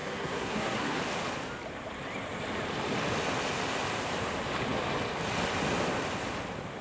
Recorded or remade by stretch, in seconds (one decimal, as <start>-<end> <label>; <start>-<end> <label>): 0.0-1.0 remade; 1.0-6.8 recorded